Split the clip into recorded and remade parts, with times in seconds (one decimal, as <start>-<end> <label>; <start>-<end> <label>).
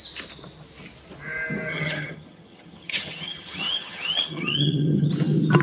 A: 0.0-1.7 recorded; 1.7-5.1 remade; 5.1-5.6 recorded